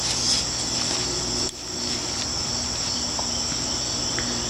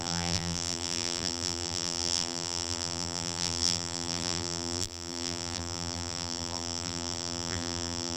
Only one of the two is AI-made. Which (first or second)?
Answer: second